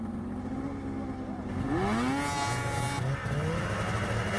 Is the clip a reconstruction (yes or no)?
no